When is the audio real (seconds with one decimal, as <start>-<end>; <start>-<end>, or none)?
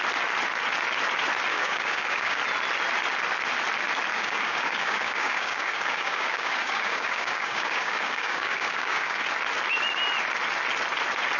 0.0-1.5; 2.4-4.1; 9.2-11.4